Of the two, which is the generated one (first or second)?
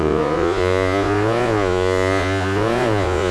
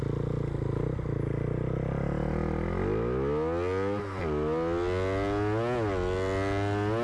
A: first